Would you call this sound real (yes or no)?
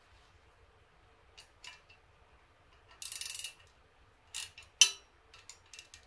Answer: yes